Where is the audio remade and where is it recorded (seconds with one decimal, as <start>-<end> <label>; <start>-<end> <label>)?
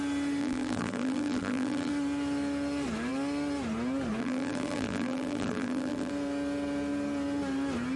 0.0-0.4 recorded; 0.4-1.9 remade; 1.9-4.2 recorded; 4.2-6.1 remade; 6.1-8.0 recorded